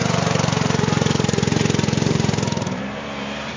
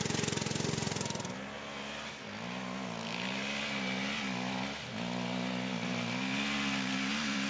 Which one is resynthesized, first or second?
first